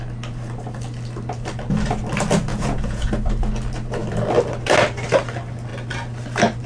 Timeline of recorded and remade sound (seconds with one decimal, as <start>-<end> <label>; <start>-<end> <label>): 0.0-2.5 recorded; 2.5-3.1 remade; 3.1-6.7 recorded